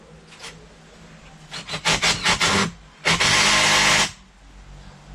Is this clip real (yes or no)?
yes